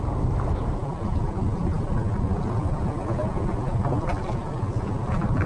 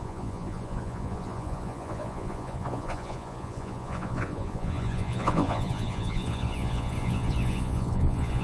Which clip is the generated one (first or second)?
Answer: second